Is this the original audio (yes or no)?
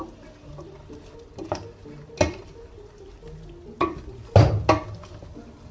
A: yes